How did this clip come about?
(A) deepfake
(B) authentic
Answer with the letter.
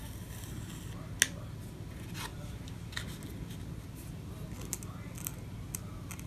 B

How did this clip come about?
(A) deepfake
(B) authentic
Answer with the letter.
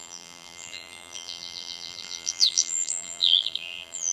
A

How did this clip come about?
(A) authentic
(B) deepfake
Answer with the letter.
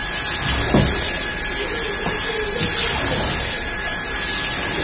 A